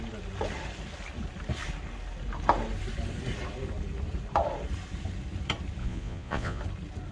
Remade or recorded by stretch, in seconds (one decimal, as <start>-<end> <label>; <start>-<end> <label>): 0.0-5.8 recorded; 5.8-6.6 remade; 6.6-7.1 recorded